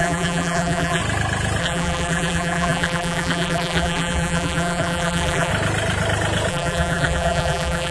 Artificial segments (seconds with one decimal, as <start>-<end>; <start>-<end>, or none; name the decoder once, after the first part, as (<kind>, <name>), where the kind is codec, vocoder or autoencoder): 0.0-1.0 (vocoder, BigVGAN v2); 1.6-5.5; 6.5-7.9